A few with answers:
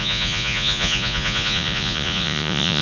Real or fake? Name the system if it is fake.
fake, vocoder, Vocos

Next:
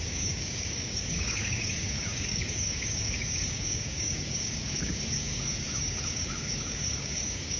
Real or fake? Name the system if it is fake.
fake, codec, DAC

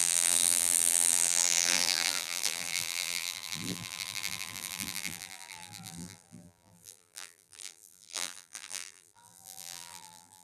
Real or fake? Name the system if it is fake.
fake, vocoder, BigVGAN v2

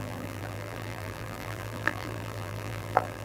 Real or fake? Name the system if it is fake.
fake, vocoder, BigVGAN v2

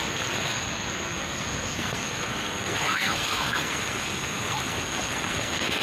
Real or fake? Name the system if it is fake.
fake, codec, SNAC